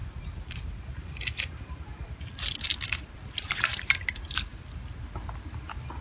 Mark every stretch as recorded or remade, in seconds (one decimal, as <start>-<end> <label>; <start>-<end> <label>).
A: 0.0-3.6 remade; 3.6-6.0 recorded